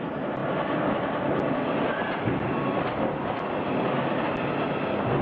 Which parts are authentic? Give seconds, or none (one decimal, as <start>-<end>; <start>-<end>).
0.0-5.2